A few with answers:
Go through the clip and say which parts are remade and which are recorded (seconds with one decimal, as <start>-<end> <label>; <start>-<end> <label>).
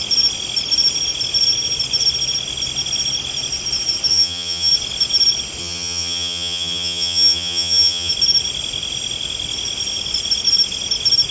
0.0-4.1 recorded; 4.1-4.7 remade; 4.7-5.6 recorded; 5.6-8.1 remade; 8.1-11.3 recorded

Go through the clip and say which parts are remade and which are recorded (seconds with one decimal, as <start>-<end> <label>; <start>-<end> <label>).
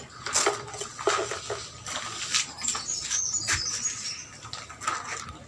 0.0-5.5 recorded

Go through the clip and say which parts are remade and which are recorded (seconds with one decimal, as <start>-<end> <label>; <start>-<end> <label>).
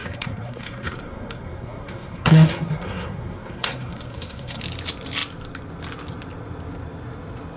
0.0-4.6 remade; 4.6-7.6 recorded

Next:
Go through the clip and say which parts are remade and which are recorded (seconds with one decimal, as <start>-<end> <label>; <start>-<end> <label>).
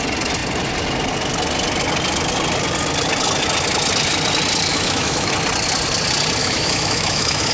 0.0-4.7 recorded; 4.7-5.3 remade; 5.3-6.4 recorded; 6.4-7.5 remade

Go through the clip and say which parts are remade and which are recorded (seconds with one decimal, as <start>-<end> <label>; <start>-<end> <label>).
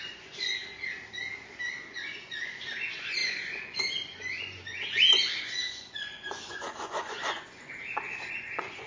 0.0-0.6 remade; 0.6-1.7 recorded; 1.7-8.9 remade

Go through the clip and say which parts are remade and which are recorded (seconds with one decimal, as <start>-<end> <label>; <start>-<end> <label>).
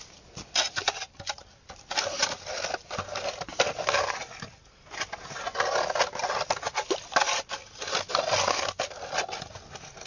0.0-10.1 recorded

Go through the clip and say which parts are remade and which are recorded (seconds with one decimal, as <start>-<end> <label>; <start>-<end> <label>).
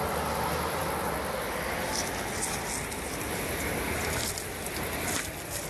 0.0-5.7 recorded